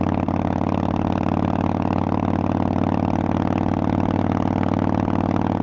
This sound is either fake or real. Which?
real